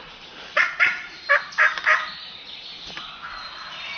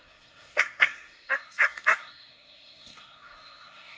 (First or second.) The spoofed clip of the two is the second